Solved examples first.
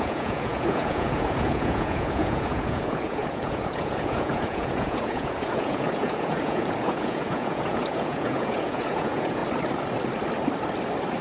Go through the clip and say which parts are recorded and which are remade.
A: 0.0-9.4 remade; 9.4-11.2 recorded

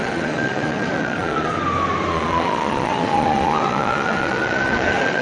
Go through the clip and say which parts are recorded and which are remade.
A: 0.0-1.5 remade; 1.5-2.1 recorded; 2.1-5.2 remade